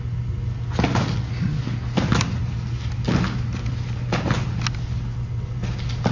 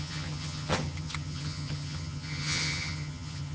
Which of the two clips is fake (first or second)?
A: second